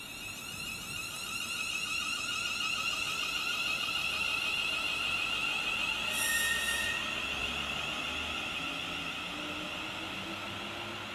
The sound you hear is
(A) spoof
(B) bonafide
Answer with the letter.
B